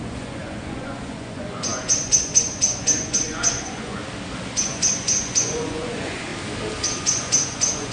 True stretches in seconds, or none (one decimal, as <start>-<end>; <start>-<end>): 4.0-4.5; 6.3-7.0